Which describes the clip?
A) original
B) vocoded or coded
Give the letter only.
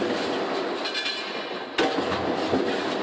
A